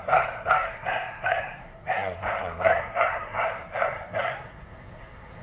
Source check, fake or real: fake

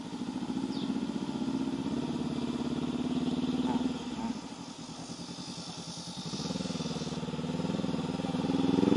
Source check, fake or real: real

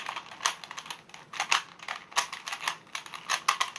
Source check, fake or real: real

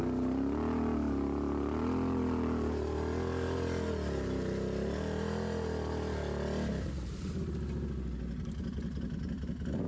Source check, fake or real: real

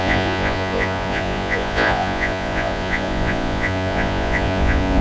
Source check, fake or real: fake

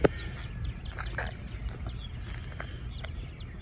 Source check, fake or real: real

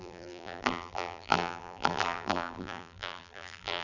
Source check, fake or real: fake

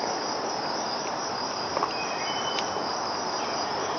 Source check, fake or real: real